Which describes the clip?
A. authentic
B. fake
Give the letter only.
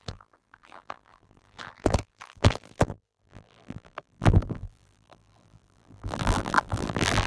B